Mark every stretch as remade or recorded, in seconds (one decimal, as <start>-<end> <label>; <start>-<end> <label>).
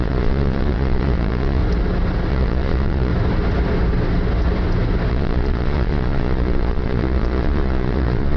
0.0-1.6 remade; 1.6-2.3 recorded; 2.3-3.1 remade; 3.1-5.1 recorded; 5.1-8.4 remade